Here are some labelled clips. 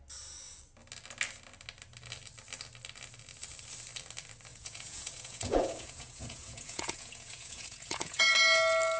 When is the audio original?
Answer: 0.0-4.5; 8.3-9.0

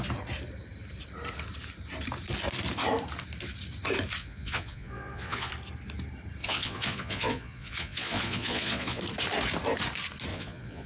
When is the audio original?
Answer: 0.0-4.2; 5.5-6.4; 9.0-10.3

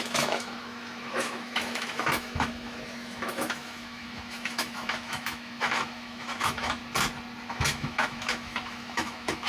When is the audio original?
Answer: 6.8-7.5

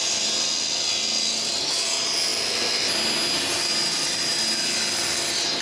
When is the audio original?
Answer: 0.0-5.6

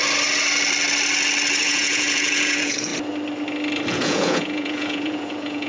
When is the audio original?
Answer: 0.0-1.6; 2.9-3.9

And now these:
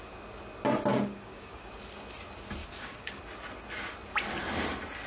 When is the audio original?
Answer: 0.0-0.9; 1.7-2.6; 3.2-5.1